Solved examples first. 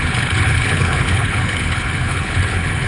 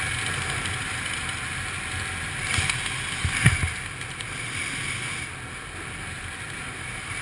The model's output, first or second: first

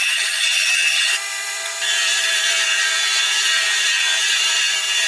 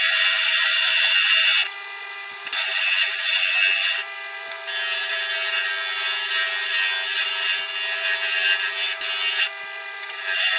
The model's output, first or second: first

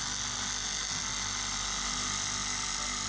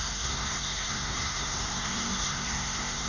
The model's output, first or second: second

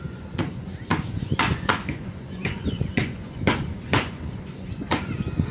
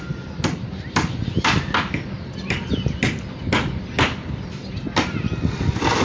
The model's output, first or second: first